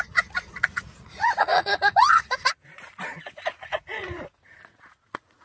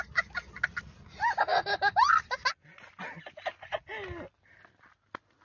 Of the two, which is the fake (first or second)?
first